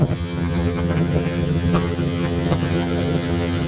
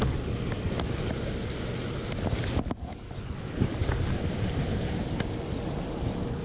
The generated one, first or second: first